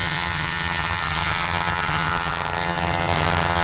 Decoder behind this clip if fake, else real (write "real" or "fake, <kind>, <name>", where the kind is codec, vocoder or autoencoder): fake, vocoder, HiFi-GAN